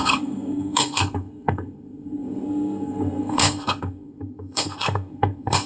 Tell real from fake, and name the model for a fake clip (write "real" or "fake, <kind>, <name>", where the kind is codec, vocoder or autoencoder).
fake, codec, SNAC